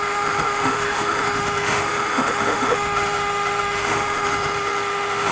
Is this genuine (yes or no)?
no